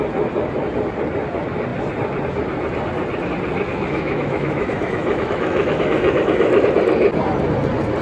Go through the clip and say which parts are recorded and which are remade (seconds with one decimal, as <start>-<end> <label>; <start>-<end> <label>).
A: 0.0-3.7 recorded; 3.7-6.5 remade; 6.5-8.0 recorded